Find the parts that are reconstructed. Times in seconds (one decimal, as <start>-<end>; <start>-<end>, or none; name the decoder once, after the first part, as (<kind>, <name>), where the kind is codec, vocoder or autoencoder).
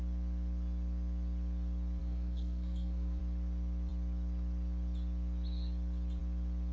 2.0-3.2 (codec, SNAC)